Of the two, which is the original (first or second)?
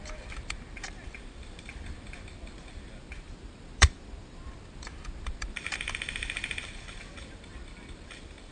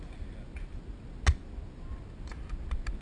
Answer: second